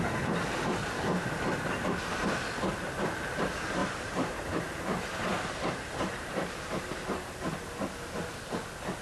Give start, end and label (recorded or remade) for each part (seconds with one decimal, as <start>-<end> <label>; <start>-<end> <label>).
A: 0.0-3.8 recorded; 3.8-4.6 remade; 4.6-5.3 recorded; 5.3-6.8 remade; 6.8-9.0 recorded